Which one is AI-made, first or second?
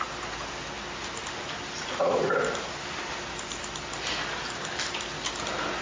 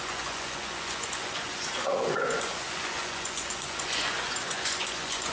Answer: second